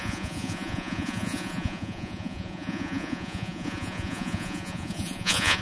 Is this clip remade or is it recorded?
remade